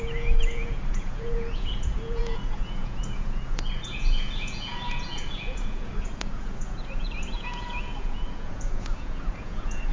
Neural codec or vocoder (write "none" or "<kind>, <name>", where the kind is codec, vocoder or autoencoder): vocoder, Vocos